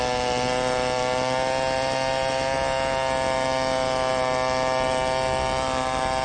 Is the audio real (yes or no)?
yes